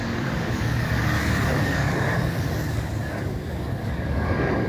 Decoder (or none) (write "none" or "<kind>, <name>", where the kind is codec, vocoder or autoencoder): codec, DAC